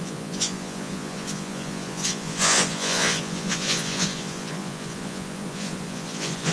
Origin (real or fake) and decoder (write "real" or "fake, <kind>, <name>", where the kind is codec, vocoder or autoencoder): fake, vocoder, Vocos